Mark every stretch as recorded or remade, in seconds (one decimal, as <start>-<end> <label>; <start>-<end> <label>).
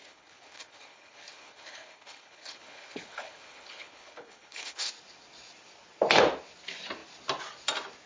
0.0-4.9 remade; 4.9-8.1 recorded